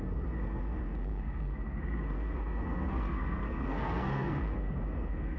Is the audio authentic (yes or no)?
no